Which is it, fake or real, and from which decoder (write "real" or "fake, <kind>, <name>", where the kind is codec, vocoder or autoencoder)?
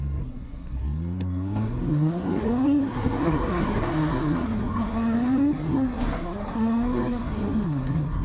fake, codec, SNAC